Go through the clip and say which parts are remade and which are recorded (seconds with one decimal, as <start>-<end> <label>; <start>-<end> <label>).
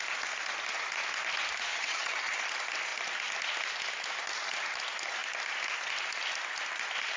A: 0.0-1.7 recorded; 1.7-2.4 remade; 2.4-7.2 recorded